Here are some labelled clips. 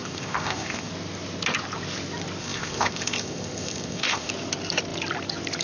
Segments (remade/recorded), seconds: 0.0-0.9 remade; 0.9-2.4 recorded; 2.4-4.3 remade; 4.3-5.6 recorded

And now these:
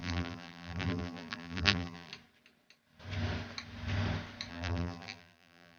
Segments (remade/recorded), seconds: 0.0-2.1 remade; 2.1-4.5 recorded; 4.5-5.8 remade

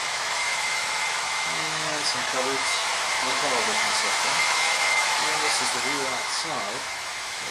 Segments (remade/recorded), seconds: 0.0-7.5 remade

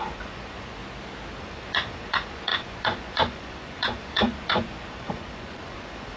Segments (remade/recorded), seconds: 0.0-0.8 remade; 0.8-1.4 recorded; 1.4-6.2 remade

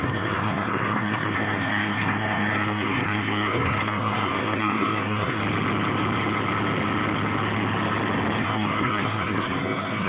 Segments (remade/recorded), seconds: 0.0-5.4 remade; 5.4-8.4 recorded; 8.4-10.1 remade

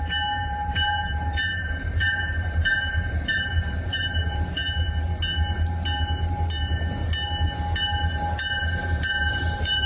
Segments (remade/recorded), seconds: 0.0-4.6 remade; 4.6-9.3 recorded; 9.3-9.9 remade

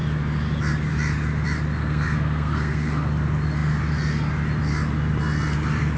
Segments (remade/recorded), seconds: 0.0-1.8 recorded; 1.8-3.1 remade; 3.1-6.0 recorded

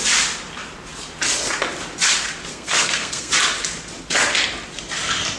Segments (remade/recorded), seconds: 0.0-2.5 recorded; 2.5-3.3 remade; 3.3-5.4 recorded